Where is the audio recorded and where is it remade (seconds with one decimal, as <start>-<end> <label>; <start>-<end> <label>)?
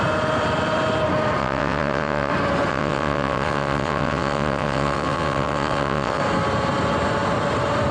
0.0-1.4 recorded; 1.4-2.3 remade; 2.3-2.7 recorded; 2.7-6.2 remade; 6.2-7.9 recorded